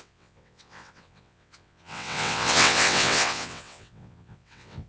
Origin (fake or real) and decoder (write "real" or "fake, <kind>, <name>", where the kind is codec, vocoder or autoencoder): fake, vocoder, WaveNeXt